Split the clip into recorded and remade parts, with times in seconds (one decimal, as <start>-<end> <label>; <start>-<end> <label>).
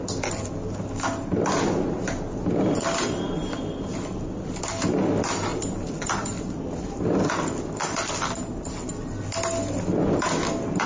0.0-5.5 recorded; 5.5-7.3 remade; 7.3-10.9 recorded